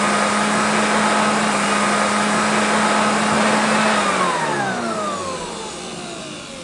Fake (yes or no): no